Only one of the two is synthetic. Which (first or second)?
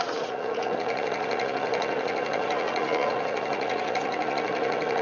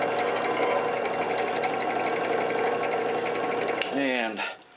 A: first